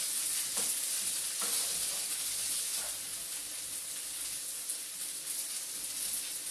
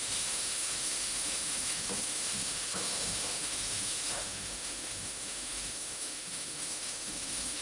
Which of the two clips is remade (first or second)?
second